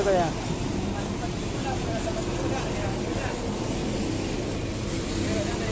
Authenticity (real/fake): real